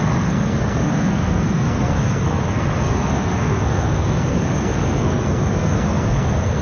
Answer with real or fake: fake